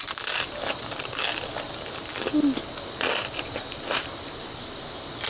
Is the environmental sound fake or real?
real